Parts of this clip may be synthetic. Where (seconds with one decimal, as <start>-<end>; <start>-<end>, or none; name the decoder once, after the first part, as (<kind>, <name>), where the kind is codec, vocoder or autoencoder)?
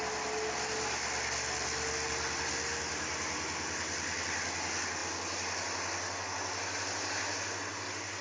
none